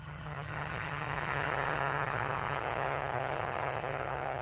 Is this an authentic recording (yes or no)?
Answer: no